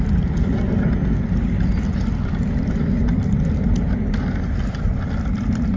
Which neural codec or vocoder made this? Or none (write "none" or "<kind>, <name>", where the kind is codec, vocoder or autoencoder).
none